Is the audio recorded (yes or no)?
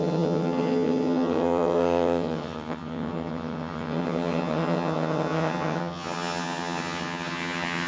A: no